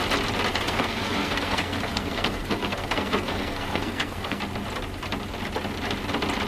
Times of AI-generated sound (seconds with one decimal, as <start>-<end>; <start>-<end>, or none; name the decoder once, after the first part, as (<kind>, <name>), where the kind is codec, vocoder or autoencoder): 0.5-4.4 (codec, SNAC)